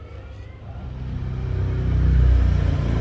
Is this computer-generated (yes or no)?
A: no